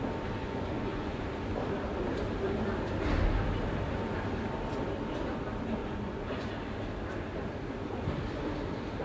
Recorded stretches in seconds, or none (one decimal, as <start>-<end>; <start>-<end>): 0.0-0.4; 1.2-5.8; 6.5-9.0